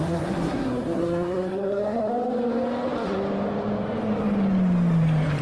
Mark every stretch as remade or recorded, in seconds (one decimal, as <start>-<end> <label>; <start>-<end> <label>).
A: 0.0-2.1 remade; 2.1-5.4 recorded